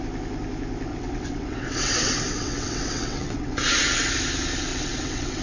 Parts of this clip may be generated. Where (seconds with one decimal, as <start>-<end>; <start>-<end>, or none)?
0.9-4.1; 4.7-5.4